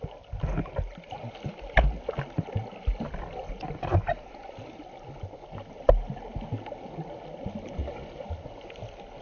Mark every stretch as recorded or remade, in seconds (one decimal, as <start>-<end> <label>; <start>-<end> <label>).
0.0-9.2 recorded